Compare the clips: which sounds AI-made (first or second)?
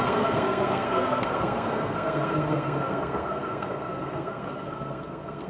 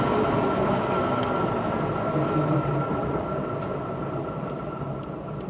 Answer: first